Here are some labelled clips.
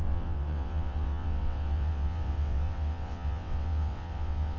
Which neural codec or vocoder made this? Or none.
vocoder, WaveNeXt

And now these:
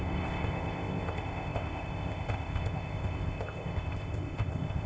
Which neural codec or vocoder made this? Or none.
codec, ZipCodec